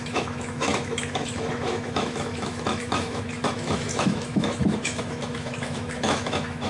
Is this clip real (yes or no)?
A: no